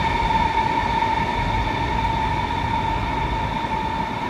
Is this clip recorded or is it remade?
recorded